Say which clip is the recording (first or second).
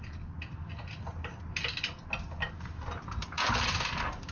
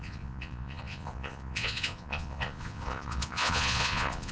first